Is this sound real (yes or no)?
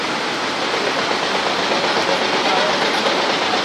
yes